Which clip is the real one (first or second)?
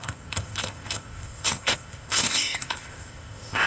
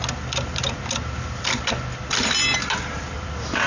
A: second